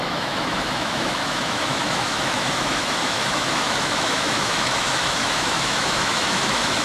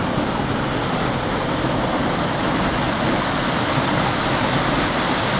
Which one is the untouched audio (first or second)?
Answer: second